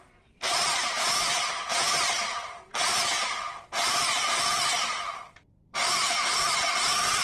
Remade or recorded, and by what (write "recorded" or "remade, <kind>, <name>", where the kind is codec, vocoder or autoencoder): remade, vocoder, BigVGAN v2